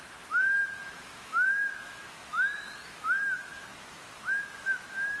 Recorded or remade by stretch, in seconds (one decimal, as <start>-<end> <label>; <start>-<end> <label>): 0.0-5.2 remade